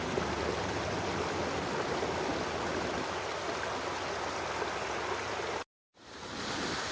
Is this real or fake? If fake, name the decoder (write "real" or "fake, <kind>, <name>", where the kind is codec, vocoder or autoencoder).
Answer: real